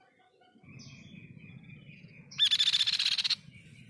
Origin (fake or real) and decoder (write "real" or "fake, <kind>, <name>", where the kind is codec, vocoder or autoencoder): real